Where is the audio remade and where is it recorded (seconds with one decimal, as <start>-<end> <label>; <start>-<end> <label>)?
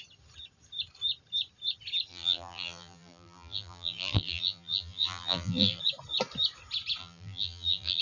0.0-2.1 recorded; 2.1-5.8 remade; 5.8-7.0 recorded; 7.0-8.0 remade